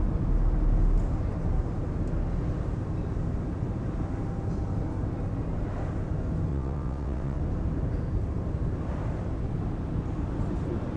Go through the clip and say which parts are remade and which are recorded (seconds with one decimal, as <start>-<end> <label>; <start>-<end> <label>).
0.0-6.5 recorded; 6.5-7.4 remade; 7.4-11.0 recorded